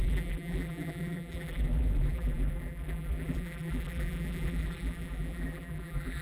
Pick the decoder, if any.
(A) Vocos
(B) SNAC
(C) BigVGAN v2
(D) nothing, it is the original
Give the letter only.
C